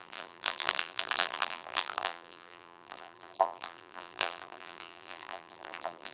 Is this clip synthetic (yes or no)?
yes